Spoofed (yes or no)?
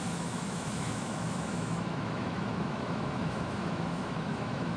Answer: yes